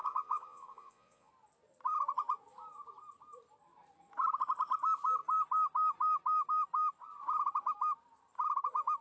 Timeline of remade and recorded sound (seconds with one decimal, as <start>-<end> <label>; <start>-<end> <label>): 0.0-1.3 remade; 1.3-9.0 recorded